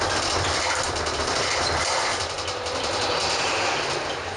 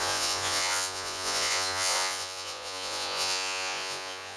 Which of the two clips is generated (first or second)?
second